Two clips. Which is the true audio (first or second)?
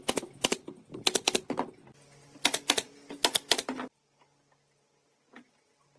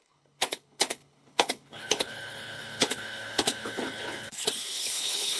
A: first